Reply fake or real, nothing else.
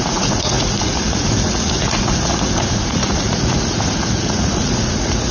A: fake